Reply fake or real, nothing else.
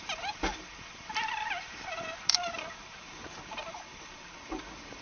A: fake